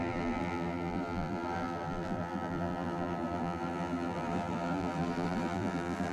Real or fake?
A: fake